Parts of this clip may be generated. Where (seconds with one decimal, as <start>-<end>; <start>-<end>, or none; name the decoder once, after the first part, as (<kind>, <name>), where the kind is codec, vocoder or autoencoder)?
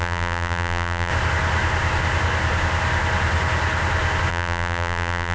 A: 0.0-1.1 (vocoder, BigVGAN v2); 4.3-5.3